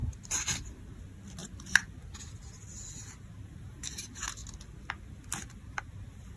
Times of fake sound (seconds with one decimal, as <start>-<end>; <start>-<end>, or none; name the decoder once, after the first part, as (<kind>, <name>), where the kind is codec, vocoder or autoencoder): 0.0-0.8 (vocoder, BigVGAN v2); 1.4-2.6

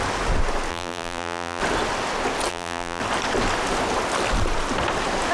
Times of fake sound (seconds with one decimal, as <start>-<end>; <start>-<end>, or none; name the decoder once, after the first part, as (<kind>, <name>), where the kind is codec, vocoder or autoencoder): 0.7-1.6 (vocoder, BigVGAN v2); 2.5-3.0